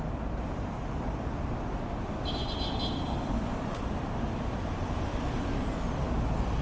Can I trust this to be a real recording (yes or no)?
yes